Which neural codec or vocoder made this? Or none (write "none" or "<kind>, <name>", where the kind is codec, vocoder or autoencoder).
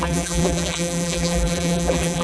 vocoder, BigVGAN v2